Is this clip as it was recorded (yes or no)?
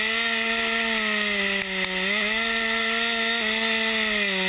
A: yes